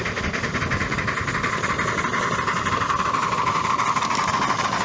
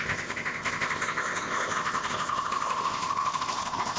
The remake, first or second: second